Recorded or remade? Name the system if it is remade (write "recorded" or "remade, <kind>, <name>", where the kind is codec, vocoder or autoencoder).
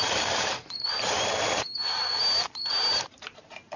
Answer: remade, vocoder, BigVGAN v2